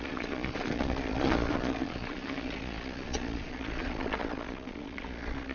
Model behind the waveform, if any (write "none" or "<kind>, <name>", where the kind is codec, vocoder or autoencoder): vocoder, Vocos